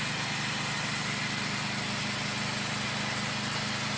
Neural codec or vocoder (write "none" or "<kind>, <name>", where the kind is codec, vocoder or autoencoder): none